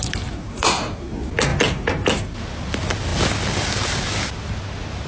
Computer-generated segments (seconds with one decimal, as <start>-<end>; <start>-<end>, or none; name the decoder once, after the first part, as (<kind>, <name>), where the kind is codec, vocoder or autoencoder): none